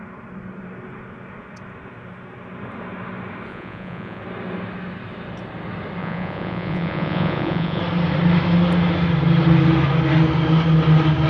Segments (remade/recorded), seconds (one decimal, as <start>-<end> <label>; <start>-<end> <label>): 0.0-3.5 recorded; 3.5-4.2 remade; 4.2-6.0 recorded; 6.0-7.8 remade; 7.8-11.3 recorded